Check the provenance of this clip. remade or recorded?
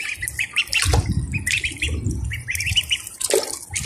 recorded